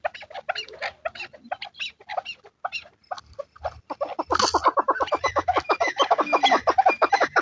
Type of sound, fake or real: real